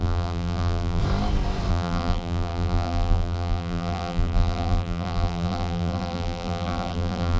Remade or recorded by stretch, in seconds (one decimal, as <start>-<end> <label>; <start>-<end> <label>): 0.0-1.0 remade; 1.0-1.7 recorded; 1.7-7.4 remade